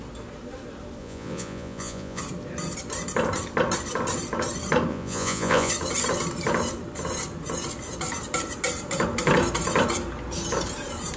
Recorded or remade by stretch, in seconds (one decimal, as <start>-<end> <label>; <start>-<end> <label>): 0.0-1.0 recorded; 1.0-2.2 remade; 2.2-4.9 recorded; 4.9-5.7 remade; 5.7-11.2 recorded